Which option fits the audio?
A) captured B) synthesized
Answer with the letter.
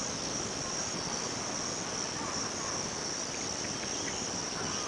A